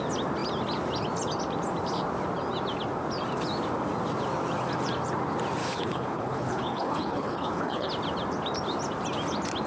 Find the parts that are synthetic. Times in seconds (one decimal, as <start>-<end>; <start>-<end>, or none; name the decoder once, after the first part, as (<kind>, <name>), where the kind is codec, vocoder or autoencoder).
5.6-7.9 (codec, HILCodec)